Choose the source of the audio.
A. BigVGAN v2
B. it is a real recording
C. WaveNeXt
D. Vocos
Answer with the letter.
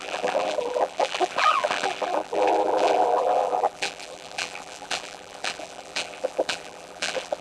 A